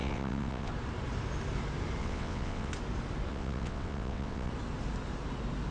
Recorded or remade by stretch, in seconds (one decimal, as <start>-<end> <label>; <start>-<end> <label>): 0.0-0.7 remade; 0.7-2.0 recorded; 2.0-2.7 remade; 2.7-3.3 recorded; 3.3-4.5 remade; 4.5-5.7 recorded